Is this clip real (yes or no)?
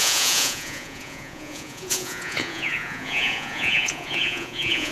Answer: no